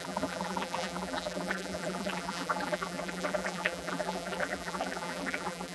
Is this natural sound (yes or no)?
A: no